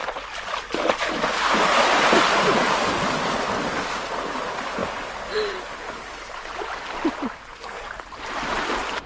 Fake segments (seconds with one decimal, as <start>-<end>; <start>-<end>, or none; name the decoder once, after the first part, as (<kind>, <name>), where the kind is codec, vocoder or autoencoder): 2.7-9.1 (vocoder, BigVGAN v2)